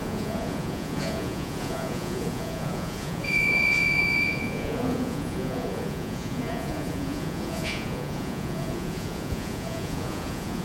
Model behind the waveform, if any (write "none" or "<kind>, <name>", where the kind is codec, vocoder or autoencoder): vocoder, Vocos